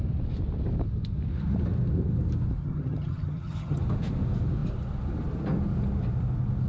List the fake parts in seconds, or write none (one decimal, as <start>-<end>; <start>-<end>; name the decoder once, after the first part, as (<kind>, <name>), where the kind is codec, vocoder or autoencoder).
2.6-3.8 (vocoder, HiFi-GAN)

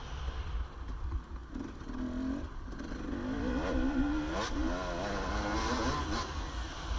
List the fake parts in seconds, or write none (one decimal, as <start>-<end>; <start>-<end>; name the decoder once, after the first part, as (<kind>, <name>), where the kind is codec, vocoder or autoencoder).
none

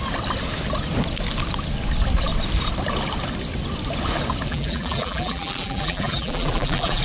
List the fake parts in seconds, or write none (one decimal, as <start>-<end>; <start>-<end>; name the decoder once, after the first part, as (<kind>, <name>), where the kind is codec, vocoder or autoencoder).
4.5-7.0 (vocoder, BigVGAN v2)

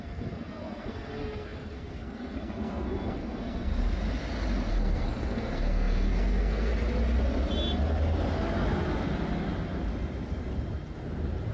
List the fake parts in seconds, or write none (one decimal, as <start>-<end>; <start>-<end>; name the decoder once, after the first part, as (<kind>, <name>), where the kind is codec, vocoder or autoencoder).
0.0-3.7 (codec, SNAC); 4.7-6.7